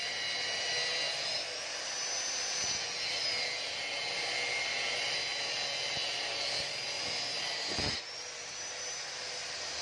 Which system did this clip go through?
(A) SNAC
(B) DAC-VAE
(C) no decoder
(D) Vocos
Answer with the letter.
C